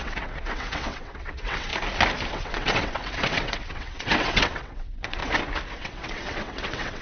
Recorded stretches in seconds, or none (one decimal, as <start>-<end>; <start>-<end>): 1.7-2.3; 5.2-5.7